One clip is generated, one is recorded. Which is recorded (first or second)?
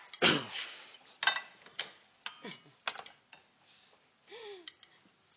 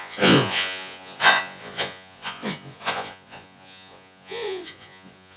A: first